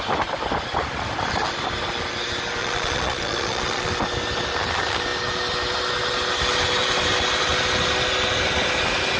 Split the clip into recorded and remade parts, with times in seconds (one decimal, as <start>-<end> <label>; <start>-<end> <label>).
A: 0.0-2.6 recorded; 2.6-3.9 remade; 3.9-9.2 recorded